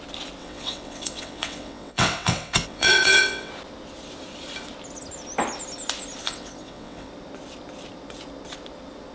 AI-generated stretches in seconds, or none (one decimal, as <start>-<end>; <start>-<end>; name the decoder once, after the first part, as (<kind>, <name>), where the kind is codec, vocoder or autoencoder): 0.4-3.5 (vocoder, WaveNeXt); 6.2-7.1